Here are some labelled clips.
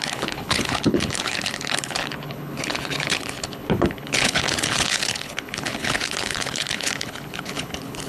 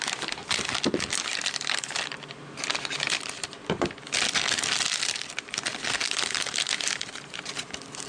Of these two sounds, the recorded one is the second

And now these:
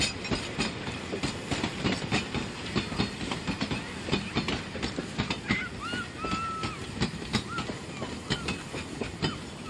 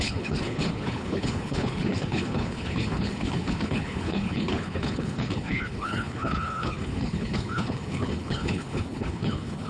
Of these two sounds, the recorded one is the first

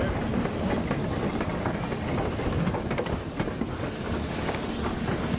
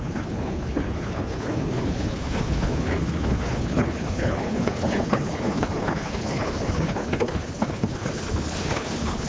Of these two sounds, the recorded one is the first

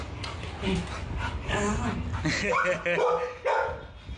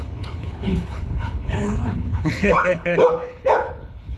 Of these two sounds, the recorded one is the first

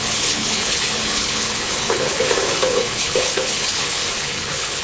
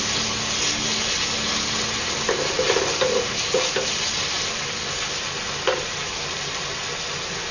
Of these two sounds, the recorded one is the second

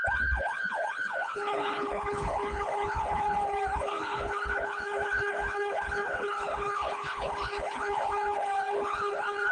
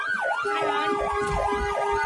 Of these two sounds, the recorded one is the second